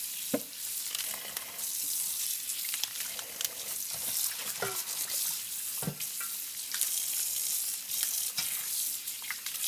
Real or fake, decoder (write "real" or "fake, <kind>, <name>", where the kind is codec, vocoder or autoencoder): real